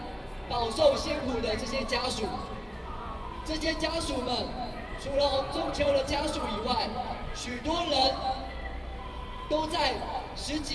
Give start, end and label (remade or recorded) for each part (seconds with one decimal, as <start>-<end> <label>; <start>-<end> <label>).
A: 0.0-8.4 remade; 8.4-9.8 recorded; 9.8-10.7 remade